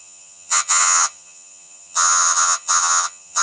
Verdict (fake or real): fake